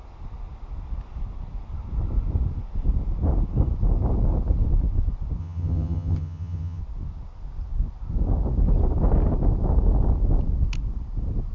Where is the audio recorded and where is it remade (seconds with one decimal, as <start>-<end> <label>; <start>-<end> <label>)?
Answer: 0.0-5.4 recorded; 5.4-6.8 remade; 6.8-11.5 recorded